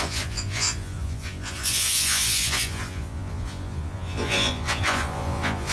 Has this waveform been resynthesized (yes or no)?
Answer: yes